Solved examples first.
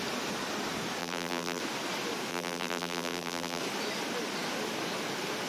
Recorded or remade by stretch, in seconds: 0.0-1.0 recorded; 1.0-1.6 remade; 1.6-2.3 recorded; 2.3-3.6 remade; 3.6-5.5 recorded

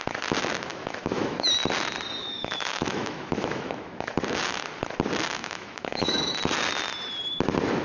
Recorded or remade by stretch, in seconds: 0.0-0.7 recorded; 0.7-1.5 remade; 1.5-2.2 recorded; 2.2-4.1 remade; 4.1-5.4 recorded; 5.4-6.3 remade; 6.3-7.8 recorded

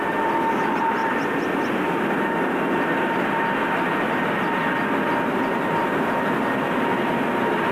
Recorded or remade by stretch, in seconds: 0.0-7.7 recorded

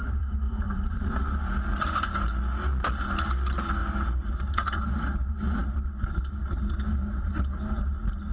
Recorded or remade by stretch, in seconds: 0.0-1.1 remade; 1.1-8.3 recorded

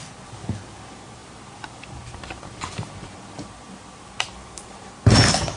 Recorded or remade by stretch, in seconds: 0.0-5.6 recorded

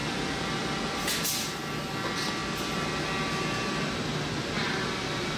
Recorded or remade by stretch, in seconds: 0.0-5.4 recorded

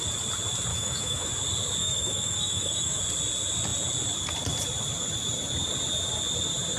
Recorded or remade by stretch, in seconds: 0.0-0.7 recorded; 0.7-1.3 remade; 1.3-1.8 recorded; 1.8-3.0 remade; 3.0-6.8 recorded